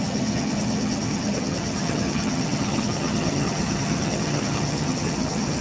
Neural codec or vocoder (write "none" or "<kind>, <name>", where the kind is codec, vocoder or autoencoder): vocoder, HiFi-GAN